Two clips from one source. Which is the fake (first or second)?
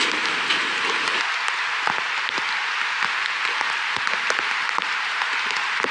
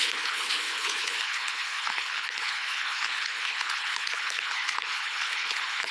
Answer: second